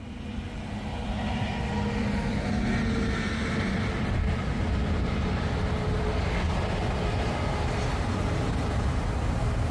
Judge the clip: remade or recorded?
recorded